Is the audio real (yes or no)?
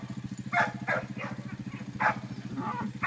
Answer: yes